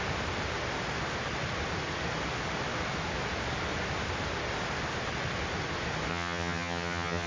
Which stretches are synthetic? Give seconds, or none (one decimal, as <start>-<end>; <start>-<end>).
6.1-7.3